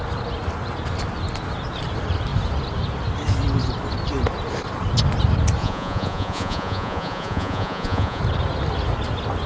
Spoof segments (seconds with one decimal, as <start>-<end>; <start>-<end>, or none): 5.6-8.2